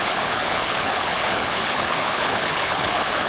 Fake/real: fake